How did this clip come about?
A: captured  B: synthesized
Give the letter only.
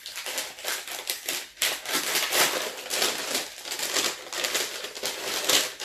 A